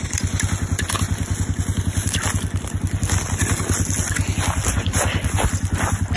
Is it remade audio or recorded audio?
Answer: recorded